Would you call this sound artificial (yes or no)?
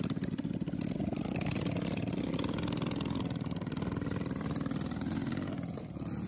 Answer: no